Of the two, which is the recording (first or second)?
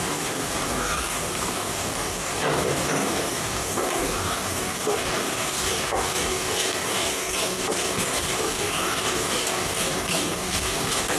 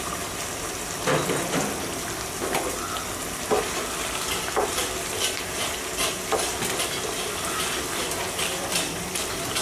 second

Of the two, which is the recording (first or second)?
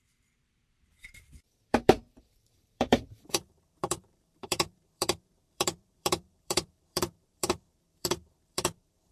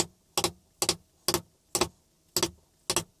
second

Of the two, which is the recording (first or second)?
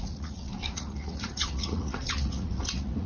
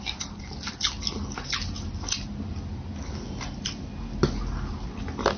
second